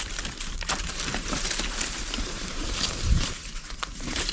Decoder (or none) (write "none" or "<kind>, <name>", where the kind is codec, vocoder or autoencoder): vocoder, BigVGAN v2